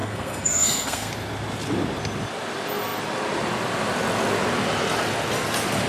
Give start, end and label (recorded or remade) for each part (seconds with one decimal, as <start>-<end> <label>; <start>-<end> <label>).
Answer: 0.0-1.1 remade; 1.1-5.9 recorded